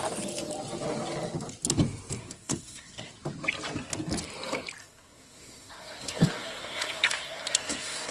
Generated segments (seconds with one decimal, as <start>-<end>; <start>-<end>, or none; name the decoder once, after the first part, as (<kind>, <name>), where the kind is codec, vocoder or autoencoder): 2.2-3.1 (codec, SNAC); 4.8-8.1